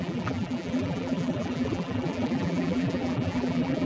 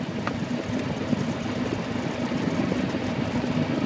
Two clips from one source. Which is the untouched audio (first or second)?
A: second